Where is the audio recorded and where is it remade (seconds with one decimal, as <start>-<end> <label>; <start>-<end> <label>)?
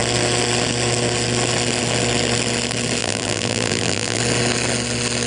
0.0-3.0 recorded; 3.0-4.2 remade; 4.2-5.3 recorded